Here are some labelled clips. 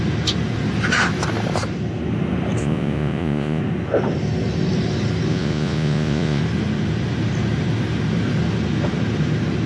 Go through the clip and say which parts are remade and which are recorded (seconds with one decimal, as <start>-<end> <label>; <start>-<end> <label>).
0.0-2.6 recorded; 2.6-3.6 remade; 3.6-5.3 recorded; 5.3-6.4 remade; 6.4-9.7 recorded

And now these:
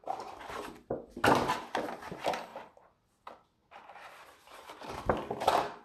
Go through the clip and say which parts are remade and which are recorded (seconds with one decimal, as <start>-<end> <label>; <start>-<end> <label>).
0.0-5.8 recorded

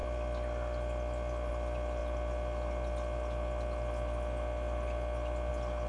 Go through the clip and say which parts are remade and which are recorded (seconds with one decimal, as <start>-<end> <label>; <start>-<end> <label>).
0.0-5.9 recorded

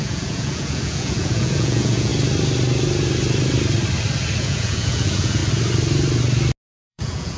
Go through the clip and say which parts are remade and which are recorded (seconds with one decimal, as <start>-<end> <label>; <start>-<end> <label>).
0.0-2.1 remade; 2.1-4.4 recorded; 4.4-5.4 remade; 5.4-6.9 recorded; 6.9-7.4 remade

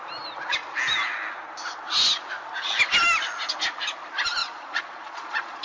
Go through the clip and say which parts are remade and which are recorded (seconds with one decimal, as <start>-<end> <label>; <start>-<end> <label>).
0.0-4.4 recorded; 4.4-5.6 remade

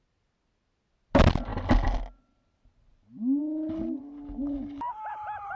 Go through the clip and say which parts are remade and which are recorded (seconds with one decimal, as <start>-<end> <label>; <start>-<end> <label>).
0.0-5.6 recorded

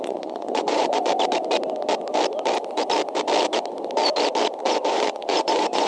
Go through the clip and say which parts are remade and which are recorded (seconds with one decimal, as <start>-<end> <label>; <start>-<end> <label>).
0.0-1.1 remade; 1.1-4.6 recorded; 4.6-5.9 remade

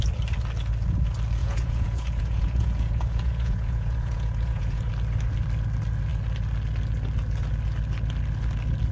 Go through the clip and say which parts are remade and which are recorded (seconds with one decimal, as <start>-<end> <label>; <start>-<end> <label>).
0.0-1.4 recorded; 1.4-4.9 remade; 4.9-8.9 recorded